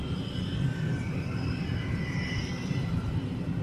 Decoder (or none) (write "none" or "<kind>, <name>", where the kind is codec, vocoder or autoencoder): none